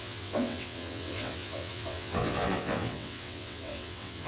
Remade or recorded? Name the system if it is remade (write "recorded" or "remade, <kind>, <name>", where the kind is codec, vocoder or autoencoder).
remade, vocoder, WaveNeXt